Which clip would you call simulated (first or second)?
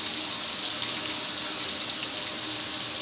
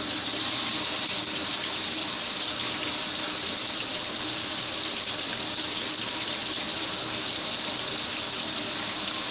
second